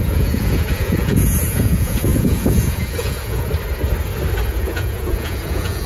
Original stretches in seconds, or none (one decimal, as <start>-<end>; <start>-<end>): 3.5-4.5